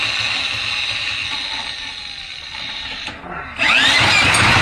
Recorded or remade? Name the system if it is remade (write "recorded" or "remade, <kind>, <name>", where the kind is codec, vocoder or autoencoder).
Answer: recorded